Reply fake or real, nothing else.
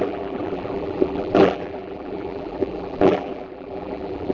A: fake